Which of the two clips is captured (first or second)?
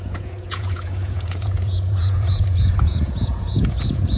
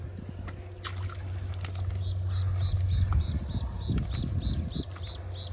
second